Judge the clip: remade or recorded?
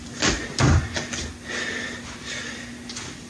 recorded